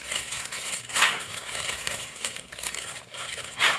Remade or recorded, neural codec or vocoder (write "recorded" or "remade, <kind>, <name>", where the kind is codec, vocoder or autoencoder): remade, codec, SNAC